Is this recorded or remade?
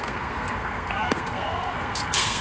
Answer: remade